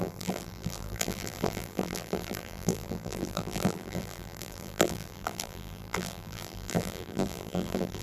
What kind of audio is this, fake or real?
fake